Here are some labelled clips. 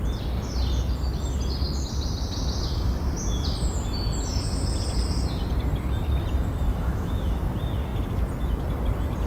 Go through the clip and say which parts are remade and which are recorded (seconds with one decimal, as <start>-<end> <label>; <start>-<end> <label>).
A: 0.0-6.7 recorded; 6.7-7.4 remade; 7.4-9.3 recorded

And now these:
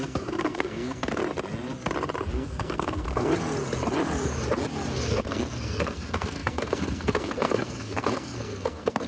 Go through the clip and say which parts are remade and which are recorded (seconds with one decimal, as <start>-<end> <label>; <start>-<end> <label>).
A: 0.0-1.2 remade; 1.2-2.3 recorded; 2.3-3.3 remade; 3.3-5.1 recorded; 5.1-9.1 remade

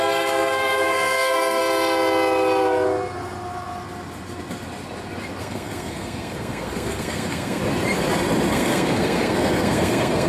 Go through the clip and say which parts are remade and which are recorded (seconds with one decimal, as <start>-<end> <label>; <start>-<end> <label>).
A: 0.0-1.6 remade; 1.6-5.4 recorded; 5.4-7.6 remade; 7.6-8.5 recorded; 8.5-10.3 remade